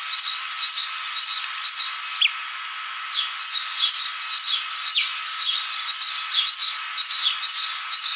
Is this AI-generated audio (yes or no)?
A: no